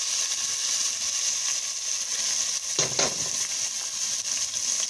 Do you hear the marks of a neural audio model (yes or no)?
no